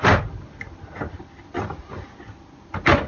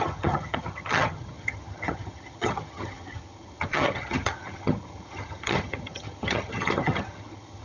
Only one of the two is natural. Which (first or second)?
first